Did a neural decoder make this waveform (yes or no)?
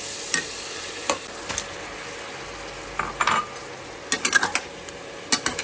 no